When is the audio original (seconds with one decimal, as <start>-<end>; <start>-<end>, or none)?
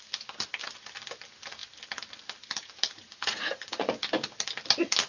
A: 0.0-3.1; 3.9-5.1